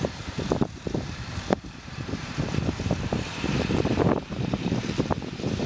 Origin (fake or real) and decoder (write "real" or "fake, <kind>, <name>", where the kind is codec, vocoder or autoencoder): fake, vocoder, BigVGAN v2